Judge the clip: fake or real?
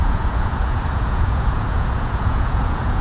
fake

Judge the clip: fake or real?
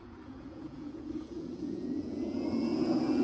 fake